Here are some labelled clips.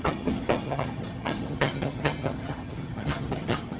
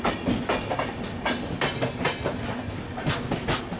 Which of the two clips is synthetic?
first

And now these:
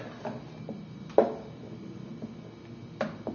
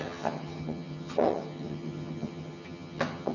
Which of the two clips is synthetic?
second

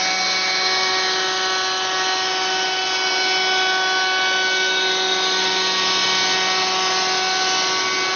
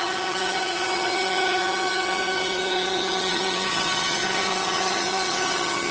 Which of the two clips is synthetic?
second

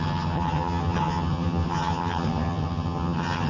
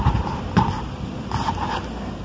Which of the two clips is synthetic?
first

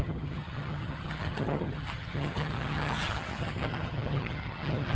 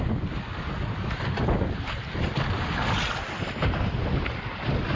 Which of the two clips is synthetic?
first